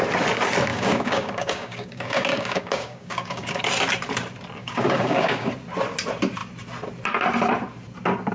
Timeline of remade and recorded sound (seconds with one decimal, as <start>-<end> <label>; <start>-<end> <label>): 0.0-0.7 recorded; 0.7-3.6 remade; 3.6-4.6 recorded; 4.6-5.5 remade; 5.5-8.3 recorded